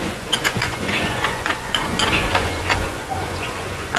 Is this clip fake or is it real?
fake